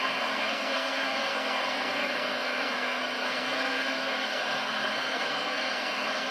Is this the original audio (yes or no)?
no